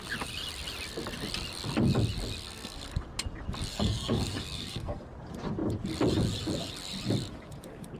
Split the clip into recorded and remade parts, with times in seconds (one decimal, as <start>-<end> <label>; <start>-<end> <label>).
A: 0.0-2.4 recorded; 2.4-2.9 remade; 2.9-3.7 recorded; 3.7-5.0 remade; 5.0-8.0 recorded